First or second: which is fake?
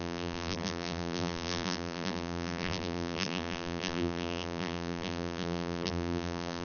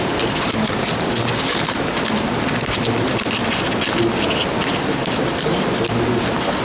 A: first